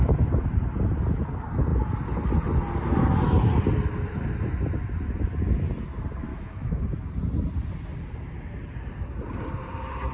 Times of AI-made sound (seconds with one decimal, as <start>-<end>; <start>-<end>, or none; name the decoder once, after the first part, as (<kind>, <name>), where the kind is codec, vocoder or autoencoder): 6.3-6.8 (autoencoder, DAC-VAE)